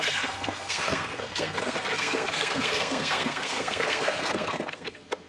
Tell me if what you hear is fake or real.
fake